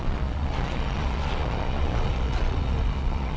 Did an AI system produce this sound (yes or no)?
yes